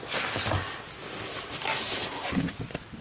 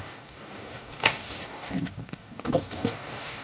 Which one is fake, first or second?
second